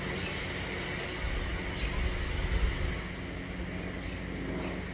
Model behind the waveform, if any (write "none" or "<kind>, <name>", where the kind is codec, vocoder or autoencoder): none